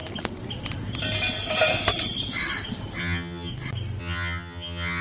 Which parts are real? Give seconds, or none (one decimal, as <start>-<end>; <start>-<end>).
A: 0.0-3.0; 3.5-4.0